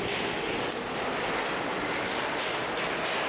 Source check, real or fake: real